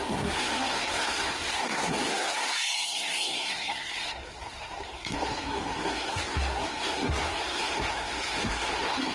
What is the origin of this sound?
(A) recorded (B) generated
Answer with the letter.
B